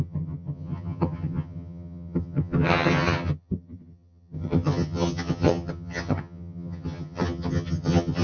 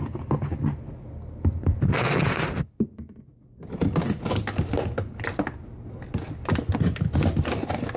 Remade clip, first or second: first